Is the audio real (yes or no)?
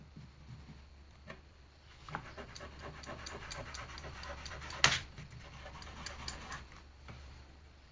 yes